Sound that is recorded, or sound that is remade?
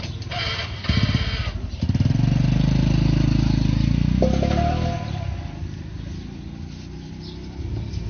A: recorded